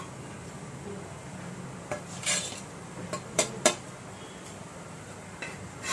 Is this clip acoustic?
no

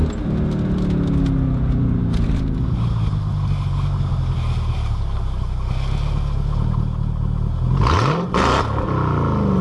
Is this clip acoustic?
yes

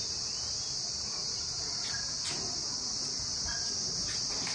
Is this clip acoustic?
yes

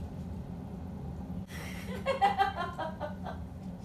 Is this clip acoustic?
yes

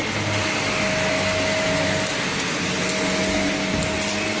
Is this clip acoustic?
yes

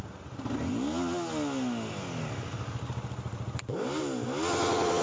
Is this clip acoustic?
yes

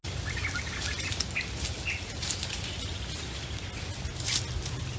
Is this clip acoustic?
yes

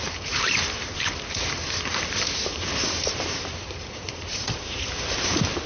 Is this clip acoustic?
no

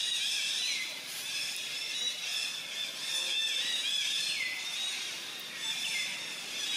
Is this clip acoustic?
yes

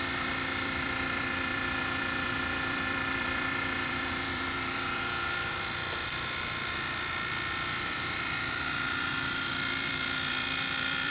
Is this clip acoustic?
no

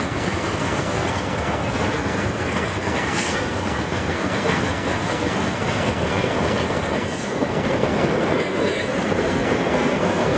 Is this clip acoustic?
no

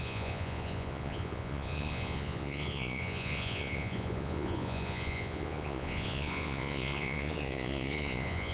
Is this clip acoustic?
no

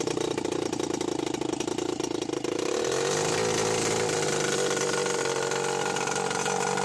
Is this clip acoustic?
yes